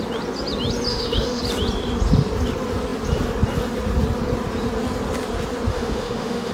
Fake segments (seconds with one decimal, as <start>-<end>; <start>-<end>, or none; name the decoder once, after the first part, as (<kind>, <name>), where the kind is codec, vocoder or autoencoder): 0.9-1.4 (autoencoder, DAC-VAE); 5.7-6.5